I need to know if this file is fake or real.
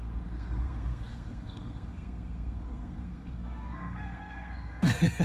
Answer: fake